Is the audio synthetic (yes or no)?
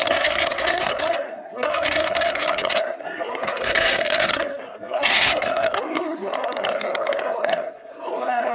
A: yes